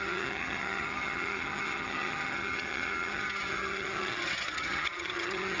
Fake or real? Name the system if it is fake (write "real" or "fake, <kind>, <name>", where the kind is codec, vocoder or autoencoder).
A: fake, vocoder, HiFi-GAN